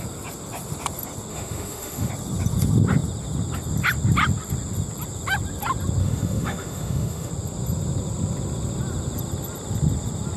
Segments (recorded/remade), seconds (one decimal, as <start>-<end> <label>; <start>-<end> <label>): 0.0-1.3 recorded; 1.3-2.1 remade; 2.1-6.0 recorded; 6.0-7.3 remade; 7.3-10.4 recorded